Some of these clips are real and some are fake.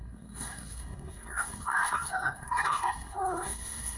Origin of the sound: fake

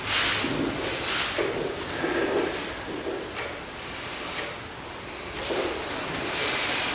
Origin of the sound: real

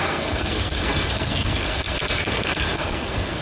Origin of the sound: fake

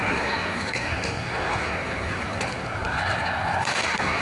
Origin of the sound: fake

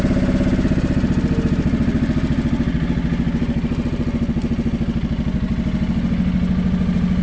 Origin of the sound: real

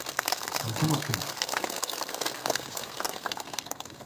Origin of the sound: fake